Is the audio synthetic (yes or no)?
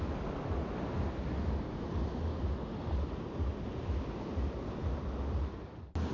no